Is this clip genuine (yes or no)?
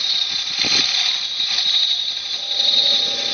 yes